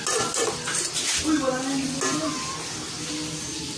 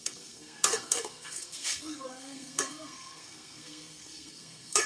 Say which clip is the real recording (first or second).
first